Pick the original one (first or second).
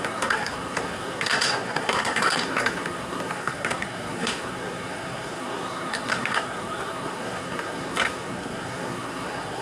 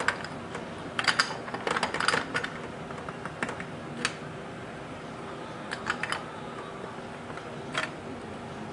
second